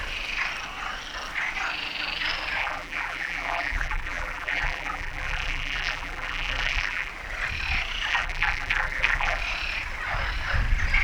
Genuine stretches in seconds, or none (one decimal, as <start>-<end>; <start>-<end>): 0.0-2.6; 7.1-8.1; 9.4-11.0